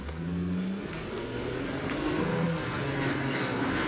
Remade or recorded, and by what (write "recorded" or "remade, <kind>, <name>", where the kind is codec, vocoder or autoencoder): remade, codec, SNAC